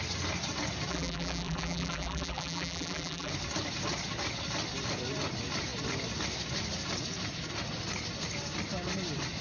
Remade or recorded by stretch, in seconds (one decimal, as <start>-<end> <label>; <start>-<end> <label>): 0.0-0.9 recorded; 0.9-3.3 remade; 3.3-9.4 recorded